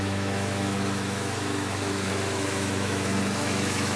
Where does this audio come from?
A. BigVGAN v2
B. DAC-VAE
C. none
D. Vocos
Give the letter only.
B